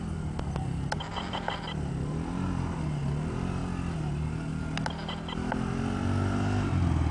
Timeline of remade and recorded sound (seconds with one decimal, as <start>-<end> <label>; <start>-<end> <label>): 0.0-7.1 recorded